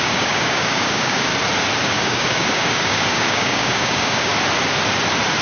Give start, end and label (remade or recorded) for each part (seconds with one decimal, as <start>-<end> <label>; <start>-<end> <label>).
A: 0.0-1.3 remade; 1.3-1.8 recorded; 1.8-4.3 remade; 4.3-5.4 recorded